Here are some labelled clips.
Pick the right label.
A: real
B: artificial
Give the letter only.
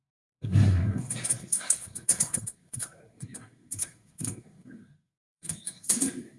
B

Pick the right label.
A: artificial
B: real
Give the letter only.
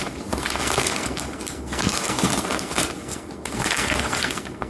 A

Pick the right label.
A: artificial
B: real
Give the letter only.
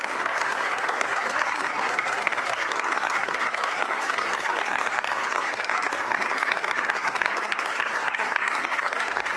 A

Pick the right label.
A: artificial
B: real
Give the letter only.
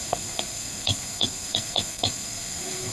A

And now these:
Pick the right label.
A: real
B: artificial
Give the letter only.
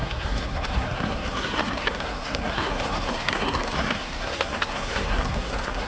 B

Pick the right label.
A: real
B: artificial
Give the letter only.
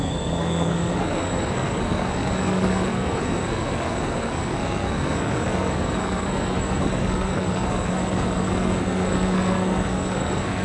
B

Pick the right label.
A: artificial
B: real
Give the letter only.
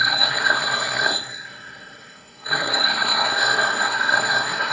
A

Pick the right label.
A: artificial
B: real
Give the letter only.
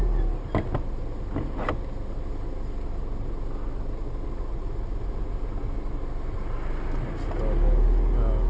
B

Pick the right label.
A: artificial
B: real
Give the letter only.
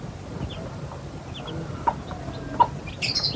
B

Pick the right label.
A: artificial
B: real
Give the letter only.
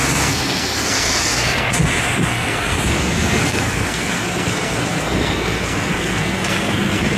A